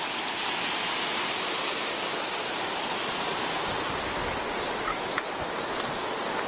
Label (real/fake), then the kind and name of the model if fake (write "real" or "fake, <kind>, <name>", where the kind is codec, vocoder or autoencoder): real